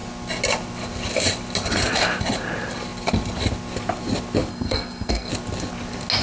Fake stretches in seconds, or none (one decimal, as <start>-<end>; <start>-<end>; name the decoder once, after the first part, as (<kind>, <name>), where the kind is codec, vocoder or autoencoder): 4.5-5.3 (codec, SNAC)